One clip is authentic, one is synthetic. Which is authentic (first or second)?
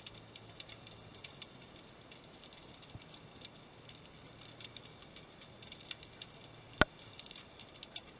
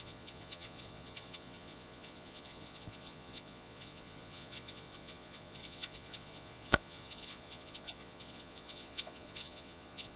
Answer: first